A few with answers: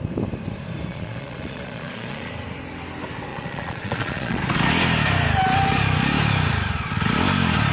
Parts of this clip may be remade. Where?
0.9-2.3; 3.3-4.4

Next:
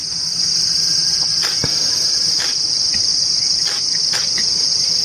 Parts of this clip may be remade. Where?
1.1-5.0

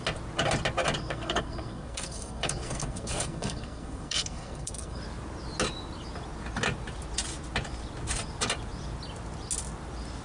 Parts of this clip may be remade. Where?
1.0-5.0

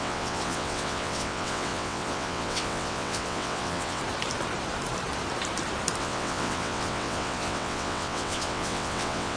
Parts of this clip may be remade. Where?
0.0-4.0; 6.0-9.4

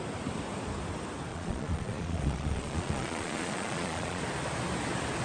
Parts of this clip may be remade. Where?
1.3-4.2